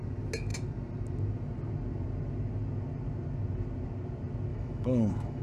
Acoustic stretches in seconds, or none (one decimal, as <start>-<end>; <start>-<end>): 0.0-4.5